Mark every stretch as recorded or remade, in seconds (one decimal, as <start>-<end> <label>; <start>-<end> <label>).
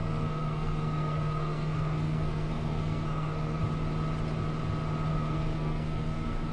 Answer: 0.0-3.6 remade; 3.6-5.1 recorded; 5.1-6.5 remade